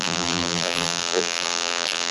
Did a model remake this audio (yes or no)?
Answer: yes